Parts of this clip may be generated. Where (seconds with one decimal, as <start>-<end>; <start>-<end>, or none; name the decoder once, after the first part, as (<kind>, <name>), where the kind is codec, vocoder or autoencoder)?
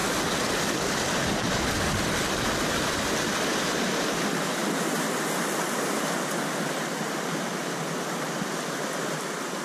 none